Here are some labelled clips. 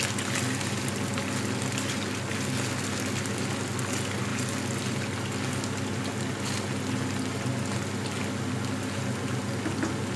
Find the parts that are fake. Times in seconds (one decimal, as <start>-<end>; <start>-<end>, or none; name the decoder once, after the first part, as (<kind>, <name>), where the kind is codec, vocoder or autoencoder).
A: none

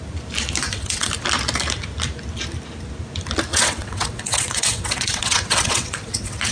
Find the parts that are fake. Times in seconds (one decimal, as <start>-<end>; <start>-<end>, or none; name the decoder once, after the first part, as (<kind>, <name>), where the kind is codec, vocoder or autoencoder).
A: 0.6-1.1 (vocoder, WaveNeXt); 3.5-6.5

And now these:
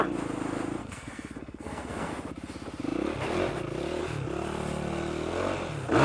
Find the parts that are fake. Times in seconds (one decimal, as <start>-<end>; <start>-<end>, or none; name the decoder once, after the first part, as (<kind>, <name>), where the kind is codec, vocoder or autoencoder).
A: 0.8-2.1 (codec, SNAC)

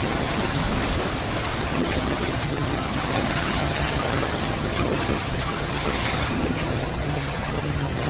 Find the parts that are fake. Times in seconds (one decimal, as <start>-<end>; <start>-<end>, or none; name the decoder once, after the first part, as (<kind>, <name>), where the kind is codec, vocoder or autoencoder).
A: 0.0-0.6 (vocoder, HiFi-GAN); 1.6-8.1

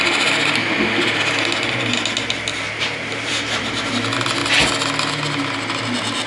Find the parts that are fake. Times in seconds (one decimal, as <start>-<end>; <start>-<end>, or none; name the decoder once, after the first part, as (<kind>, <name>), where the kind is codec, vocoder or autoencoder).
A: 2.5-3.9 (vocoder, BigVGAN v2)

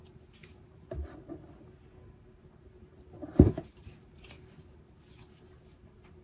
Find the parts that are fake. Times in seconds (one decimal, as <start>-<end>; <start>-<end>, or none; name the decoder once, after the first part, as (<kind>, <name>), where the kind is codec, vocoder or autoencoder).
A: 0.4-1.6 (vocoder, BigVGAN v2); 3.2-5.0

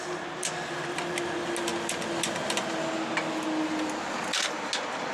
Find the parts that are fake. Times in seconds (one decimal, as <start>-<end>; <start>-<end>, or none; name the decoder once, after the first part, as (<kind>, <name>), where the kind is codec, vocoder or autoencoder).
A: none